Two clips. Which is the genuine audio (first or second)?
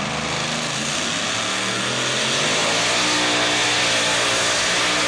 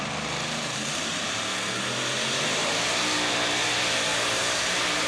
first